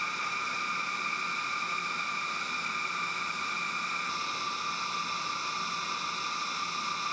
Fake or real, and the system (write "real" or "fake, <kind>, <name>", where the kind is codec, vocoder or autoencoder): real